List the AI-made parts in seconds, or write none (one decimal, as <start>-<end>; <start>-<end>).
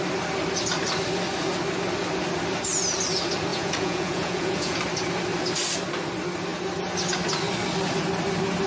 3.5-4.8